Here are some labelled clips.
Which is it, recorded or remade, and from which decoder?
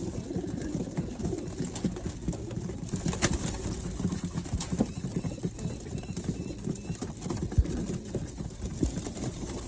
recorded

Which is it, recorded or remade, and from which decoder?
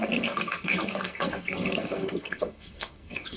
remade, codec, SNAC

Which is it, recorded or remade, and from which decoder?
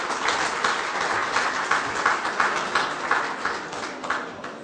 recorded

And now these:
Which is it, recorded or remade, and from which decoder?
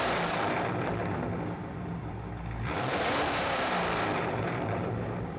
remade, vocoder, BigVGAN v2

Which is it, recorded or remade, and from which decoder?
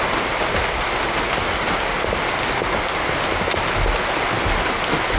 recorded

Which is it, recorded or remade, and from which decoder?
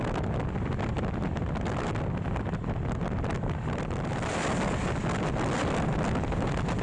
recorded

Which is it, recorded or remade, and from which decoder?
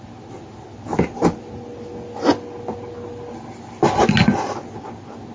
recorded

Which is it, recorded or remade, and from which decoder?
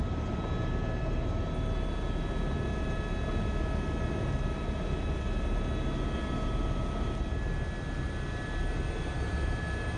recorded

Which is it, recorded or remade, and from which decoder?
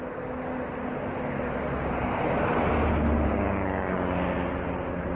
recorded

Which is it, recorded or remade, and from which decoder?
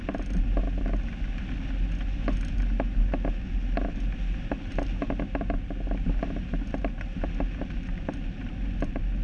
recorded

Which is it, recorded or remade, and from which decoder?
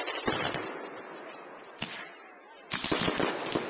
recorded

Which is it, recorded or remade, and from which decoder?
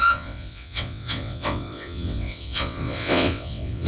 remade, vocoder, WaveNeXt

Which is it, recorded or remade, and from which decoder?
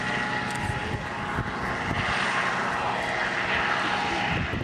recorded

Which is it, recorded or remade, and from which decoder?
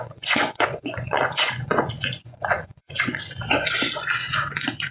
remade, vocoder, Vocos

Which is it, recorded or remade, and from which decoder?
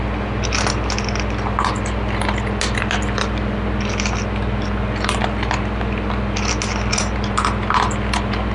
recorded